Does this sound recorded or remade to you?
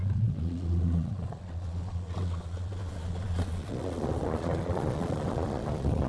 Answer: remade